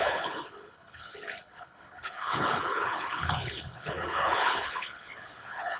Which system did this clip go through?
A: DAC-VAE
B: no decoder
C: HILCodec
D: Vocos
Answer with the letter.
C